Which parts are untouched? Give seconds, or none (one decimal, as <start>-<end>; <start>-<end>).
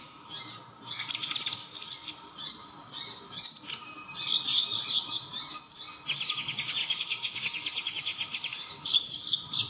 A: 0.0-6.8; 7.4-9.7